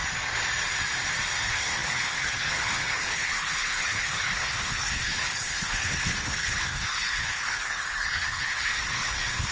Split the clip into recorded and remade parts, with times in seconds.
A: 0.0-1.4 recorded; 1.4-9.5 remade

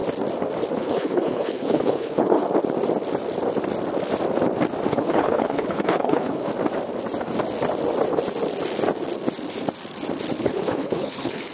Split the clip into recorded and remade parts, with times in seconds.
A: 0.0-0.7 recorded; 0.7-2.4 remade; 2.4-4.9 recorded; 4.9-6.5 remade; 6.5-10.4 recorded; 10.4-11.5 remade

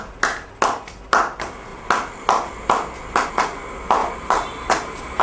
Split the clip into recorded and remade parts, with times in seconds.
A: 0.0-5.2 recorded